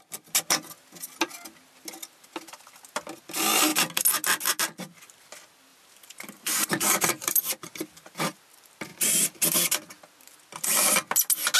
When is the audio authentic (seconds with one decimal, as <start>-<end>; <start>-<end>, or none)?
0.0-5.7; 7.5-11.6